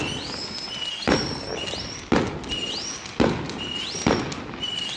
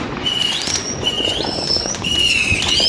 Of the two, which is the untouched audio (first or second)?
first